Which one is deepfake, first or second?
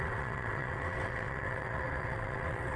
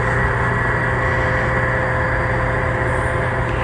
first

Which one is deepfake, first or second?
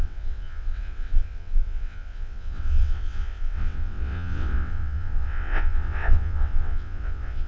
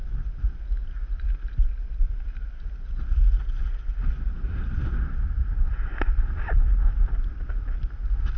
first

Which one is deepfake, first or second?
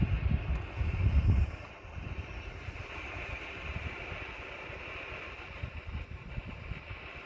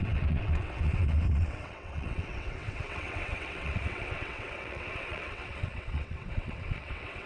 second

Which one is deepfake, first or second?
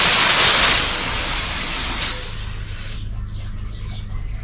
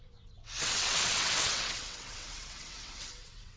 second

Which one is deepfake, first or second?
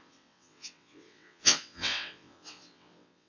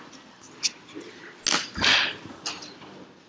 first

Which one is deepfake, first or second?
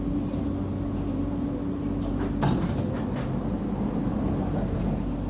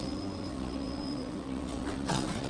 second